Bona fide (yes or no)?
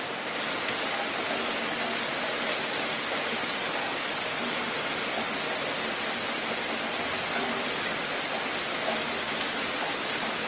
yes